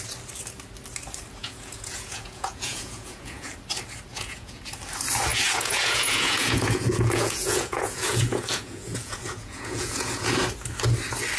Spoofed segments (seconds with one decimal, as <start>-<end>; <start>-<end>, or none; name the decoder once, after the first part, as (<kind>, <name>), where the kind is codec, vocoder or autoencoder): 1.4-3.5 (vocoder, Vocos); 4.1-4.6; 5.3-10.3